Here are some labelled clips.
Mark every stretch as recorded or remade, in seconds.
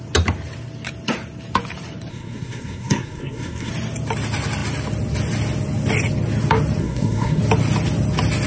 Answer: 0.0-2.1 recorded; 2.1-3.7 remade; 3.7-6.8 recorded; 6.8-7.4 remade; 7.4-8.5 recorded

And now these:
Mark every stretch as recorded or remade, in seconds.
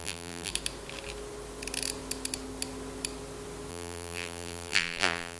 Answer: 0.0-0.5 remade; 0.5-3.7 recorded; 3.7-5.4 remade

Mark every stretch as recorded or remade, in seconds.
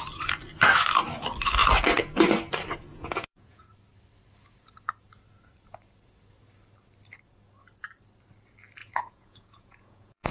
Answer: 0.0-2.9 recorded; 2.9-3.7 remade; 3.7-8.8 recorded; 8.8-10.3 remade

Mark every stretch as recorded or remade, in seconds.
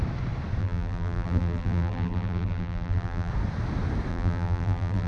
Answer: 0.0-0.6 recorded; 0.6-3.3 remade; 3.3-4.1 recorded; 4.1-5.1 remade